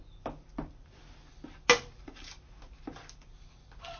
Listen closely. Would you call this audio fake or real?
real